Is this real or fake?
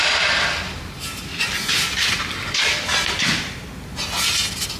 real